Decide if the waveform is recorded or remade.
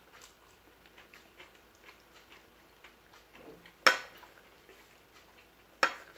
recorded